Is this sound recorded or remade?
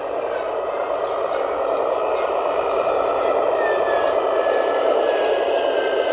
recorded